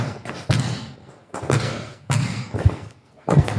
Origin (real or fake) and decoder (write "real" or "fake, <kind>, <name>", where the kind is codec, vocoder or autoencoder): fake, codec, SNAC